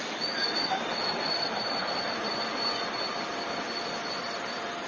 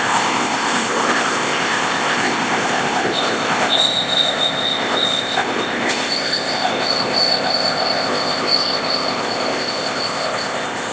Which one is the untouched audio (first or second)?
first